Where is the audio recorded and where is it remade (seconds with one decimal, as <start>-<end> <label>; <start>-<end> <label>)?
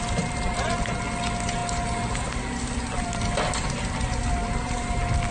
0.0-5.3 recorded